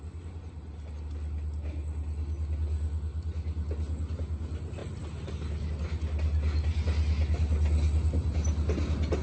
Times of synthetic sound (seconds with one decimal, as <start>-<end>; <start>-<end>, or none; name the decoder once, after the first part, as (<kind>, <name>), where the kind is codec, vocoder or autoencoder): none

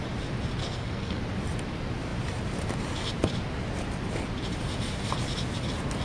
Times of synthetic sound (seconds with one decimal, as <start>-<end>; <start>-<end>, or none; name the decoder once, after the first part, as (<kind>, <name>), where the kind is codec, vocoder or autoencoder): 0.6-1.2 (codec, SNAC)

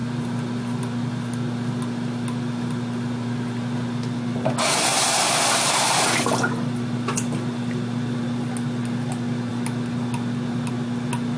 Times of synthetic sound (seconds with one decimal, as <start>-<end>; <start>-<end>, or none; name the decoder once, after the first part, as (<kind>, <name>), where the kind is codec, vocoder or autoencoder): 4.9-8.2 (vocoder, BigVGAN v2)